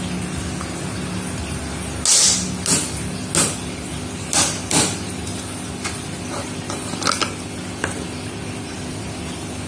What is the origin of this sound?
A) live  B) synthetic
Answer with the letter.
A